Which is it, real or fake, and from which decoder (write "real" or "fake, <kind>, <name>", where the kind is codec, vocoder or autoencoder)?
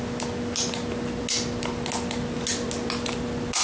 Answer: real